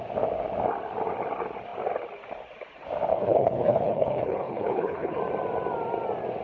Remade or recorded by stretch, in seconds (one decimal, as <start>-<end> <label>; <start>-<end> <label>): 0.0-3.1 recorded; 3.1-5.2 remade; 5.2-6.4 recorded